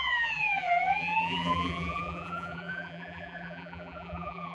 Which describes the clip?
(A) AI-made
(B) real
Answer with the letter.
A